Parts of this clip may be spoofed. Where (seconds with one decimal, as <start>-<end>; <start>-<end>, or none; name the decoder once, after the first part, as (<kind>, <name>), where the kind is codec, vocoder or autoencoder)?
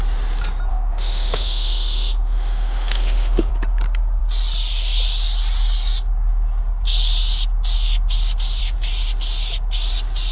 0.7-3.5 (autoencoder, DAC-VAE)